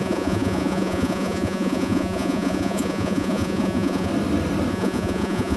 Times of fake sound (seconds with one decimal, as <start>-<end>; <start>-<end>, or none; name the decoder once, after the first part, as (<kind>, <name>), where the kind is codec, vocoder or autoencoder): 0.0-4.1 (vocoder, Vocos); 4.7-5.6

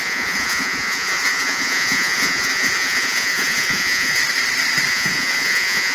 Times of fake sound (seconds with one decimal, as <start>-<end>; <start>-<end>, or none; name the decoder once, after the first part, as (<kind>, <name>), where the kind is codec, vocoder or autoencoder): 0.0-4.2 (vocoder, Vocos); 4.9-5.9

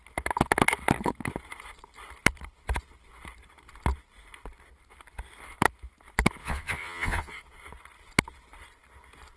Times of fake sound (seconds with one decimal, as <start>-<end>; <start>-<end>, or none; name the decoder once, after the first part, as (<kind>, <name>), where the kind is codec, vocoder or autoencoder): 6.4-7.4 (vocoder, Vocos)